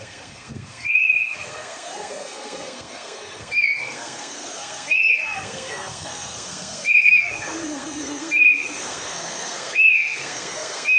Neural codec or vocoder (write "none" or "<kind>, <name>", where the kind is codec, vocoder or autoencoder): codec, SNAC